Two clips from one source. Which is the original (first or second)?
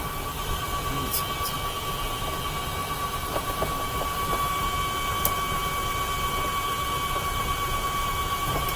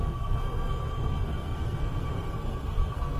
first